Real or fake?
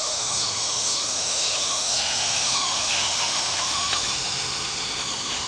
fake